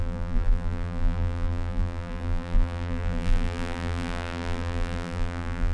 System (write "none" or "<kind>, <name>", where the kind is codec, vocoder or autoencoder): vocoder, BigVGAN v2